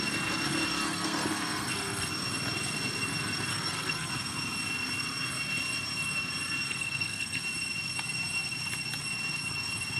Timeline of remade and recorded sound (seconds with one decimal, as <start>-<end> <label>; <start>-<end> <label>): 0.0-0.8 recorded; 0.8-2.1 remade; 2.1-3.5 recorded; 3.5-4.1 remade; 4.1-6.7 recorded; 6.7-7.4 remade; 7.4-10.0 recorded